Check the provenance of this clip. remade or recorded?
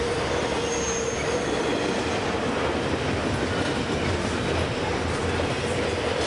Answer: recorded